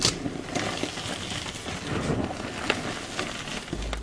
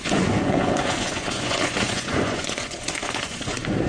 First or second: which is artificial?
second